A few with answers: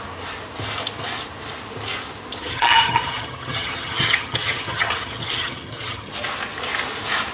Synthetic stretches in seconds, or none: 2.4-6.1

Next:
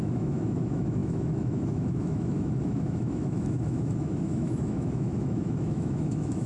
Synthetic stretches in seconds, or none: 0.0-6.5

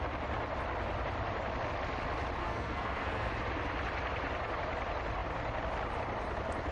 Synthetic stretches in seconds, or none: 2.4-3.3

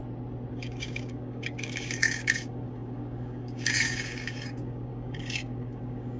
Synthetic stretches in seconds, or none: 0.5-6.2